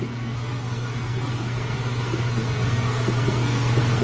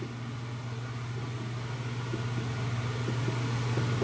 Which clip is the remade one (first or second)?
first